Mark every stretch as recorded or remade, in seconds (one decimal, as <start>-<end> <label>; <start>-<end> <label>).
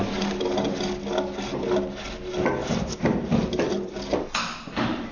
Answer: 0.0-5.1 recorded